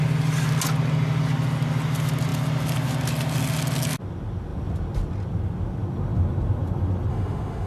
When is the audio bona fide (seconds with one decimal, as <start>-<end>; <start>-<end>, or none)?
0.0-7.1